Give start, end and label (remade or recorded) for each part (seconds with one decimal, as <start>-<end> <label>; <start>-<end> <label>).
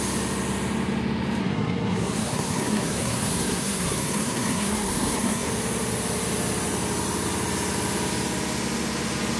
0.0-1.4 recorded; 1.4-5.5 remade; 5.5-9.4 recorded